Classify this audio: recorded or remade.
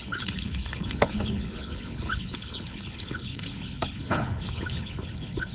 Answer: remade